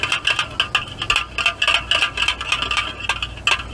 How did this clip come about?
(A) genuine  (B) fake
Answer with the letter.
A